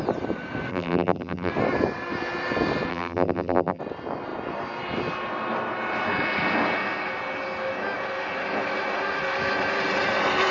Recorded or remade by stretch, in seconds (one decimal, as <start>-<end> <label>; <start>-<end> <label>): 0.0-0.7 recorded; 0.7-1.5 remade; 1.5-2.9 recorded; 2.9-3.8 remade; 3.8-10.5 recorded